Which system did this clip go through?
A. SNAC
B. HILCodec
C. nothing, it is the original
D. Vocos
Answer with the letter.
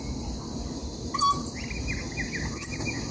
C